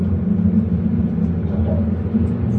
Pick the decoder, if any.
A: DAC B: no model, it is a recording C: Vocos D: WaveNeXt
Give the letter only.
B